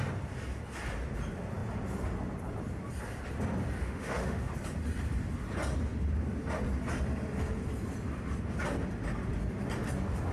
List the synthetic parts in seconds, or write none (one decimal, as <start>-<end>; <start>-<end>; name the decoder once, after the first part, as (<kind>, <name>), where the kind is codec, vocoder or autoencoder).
3.8-4.5 (autoencoder, DAC-VAE)